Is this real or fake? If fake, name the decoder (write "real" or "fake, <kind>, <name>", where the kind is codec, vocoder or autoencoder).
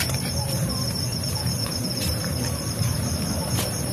fake, vocoder, BigVGAN v2